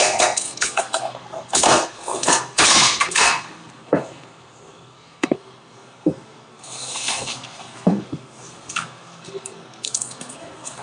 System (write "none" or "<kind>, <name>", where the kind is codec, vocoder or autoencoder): codec, SNAC